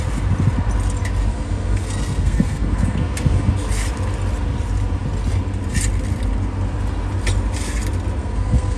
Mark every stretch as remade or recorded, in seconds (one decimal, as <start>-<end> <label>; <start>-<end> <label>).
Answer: 0.0-1.3 recorded; 1.3-3.5 remade; 3.5-8.2 recorded; 8.2-8.8 remade